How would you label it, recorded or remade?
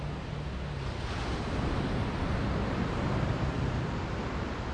recorded